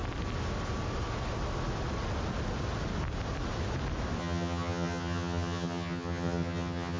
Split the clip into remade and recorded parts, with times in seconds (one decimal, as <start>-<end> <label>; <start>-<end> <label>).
0.0-4.2 recorded; 4.2-7.0 remade